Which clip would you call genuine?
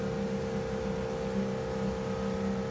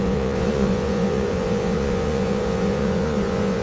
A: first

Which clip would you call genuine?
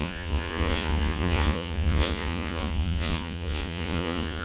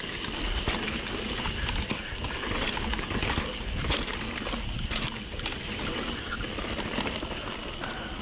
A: second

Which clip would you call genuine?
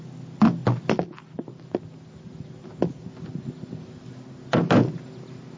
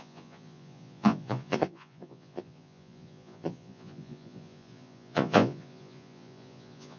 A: first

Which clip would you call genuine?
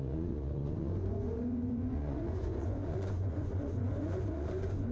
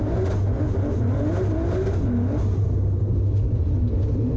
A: second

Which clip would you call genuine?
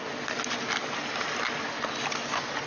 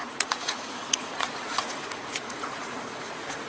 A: first